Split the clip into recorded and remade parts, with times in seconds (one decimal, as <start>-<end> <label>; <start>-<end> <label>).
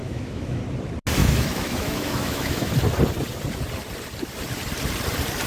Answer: 0.0-0.6 remade; 0.6-1.2 recorded; 1.2-2.7 remade; 2.7-5.5 recorded